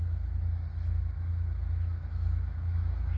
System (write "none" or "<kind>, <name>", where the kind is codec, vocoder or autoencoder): autoencoder, DAC-VAE